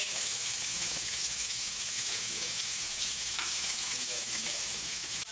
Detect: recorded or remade remade